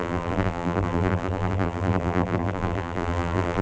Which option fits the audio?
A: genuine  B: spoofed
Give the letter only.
B